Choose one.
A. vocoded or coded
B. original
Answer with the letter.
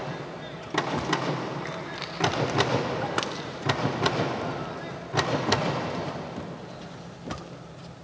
B